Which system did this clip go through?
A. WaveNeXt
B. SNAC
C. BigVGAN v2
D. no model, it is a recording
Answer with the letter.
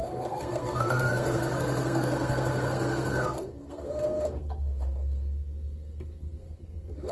B